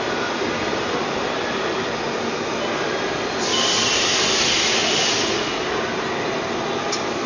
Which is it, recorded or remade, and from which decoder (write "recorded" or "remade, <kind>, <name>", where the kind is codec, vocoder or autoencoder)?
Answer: recorded